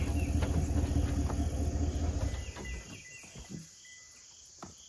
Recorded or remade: recorded